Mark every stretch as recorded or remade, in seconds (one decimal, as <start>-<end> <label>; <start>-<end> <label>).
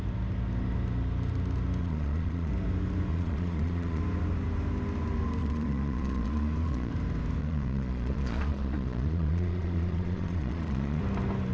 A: 0.0-1.8 recorded; 1.8-2.5 remade; 2.5-3.1 recorded; 3.1-4.0 remade; 4.0-5.4 recorded; 5.4-6.9 remade; 6.9-7.4 recorded; 7.4-11.0 remade; 11.0-11.5 recorded